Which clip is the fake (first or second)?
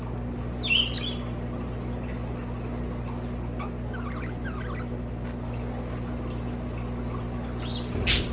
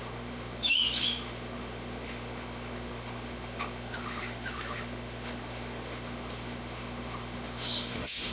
second